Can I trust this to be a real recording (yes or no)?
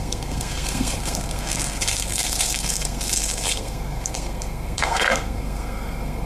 no